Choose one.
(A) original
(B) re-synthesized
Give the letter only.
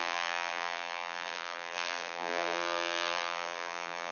B